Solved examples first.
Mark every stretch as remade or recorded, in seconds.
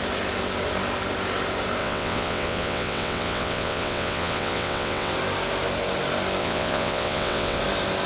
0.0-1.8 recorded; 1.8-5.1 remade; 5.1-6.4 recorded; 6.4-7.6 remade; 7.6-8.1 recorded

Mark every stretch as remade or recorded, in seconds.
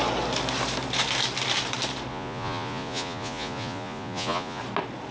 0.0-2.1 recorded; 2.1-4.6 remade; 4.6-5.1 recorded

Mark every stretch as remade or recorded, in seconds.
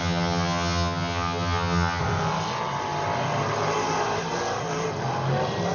0.0-2.0 remade; 2.0-5.7 recorded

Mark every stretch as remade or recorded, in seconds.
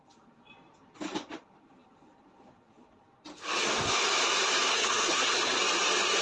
0.0-4.7 recorded; 4.7-5.6 remade; 5.6-6.2 recorded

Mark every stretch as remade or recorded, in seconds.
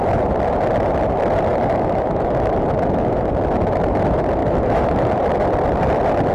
0.0-1.5 recorded; 1.5-3.3 remade; 3.3-4.4 recorded; 4.4-5.1 remade; 5.1-6.3 recorded